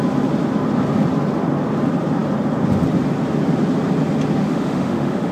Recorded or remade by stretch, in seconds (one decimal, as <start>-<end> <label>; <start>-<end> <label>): 0.0-4.4 recorded; 4.4-5.3 remade